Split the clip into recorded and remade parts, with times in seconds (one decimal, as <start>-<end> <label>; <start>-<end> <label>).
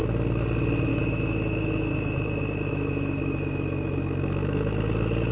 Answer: 0.0-0.9 recorded; 0.9-5.3 remade